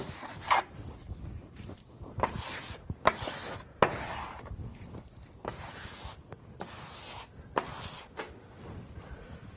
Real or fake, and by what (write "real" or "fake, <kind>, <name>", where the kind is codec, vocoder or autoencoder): real